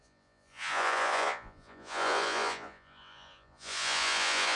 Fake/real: fake